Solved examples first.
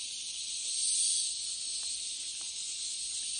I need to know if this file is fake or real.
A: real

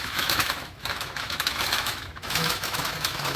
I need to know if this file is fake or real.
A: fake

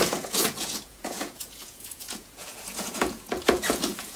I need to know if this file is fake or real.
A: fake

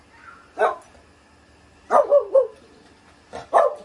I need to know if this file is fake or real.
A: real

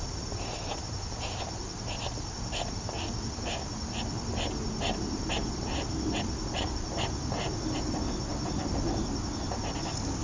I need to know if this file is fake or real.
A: real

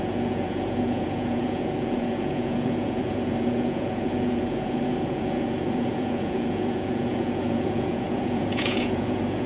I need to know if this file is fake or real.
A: fake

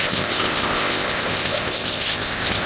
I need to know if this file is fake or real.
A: fake